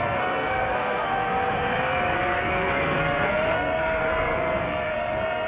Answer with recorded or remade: remade